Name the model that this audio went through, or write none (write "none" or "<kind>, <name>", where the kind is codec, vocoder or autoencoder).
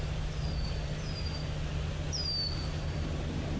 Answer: none